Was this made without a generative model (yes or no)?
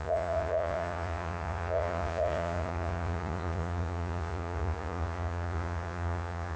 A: no